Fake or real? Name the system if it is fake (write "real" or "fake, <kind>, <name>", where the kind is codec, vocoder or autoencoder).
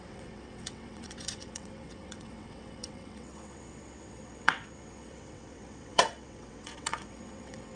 fake, vocoder, WaveNeXt